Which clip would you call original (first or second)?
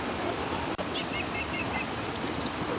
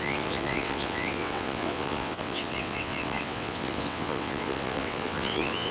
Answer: first